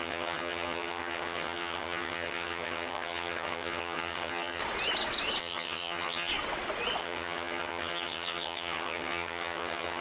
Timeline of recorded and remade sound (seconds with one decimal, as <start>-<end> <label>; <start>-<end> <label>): 0.0-4.6 remade; 4.6-5.4 recorded; 5.4-6.3 remade; 6.3-7.0 recorded; 7.0-10.0 remade